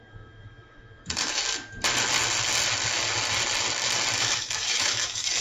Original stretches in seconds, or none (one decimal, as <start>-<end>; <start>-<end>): 1.4-4.2